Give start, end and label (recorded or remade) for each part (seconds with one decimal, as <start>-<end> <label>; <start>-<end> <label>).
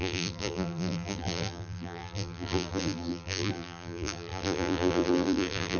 0.0-5.8 remade